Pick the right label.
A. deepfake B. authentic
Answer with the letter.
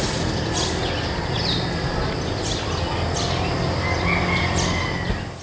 B